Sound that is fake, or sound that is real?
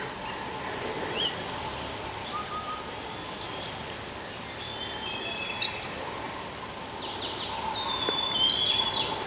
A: real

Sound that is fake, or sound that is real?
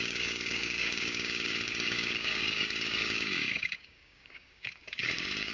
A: fake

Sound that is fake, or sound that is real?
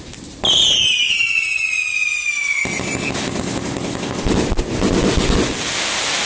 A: real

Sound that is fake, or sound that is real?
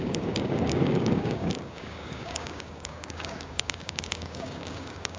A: fake